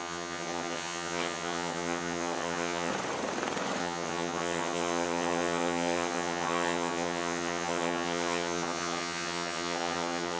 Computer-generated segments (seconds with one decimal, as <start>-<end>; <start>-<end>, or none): 0.0-2.9; 3.8-10.4